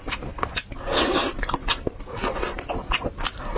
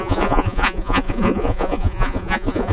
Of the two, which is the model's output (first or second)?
second